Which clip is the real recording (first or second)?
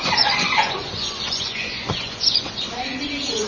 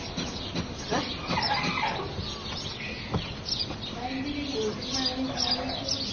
second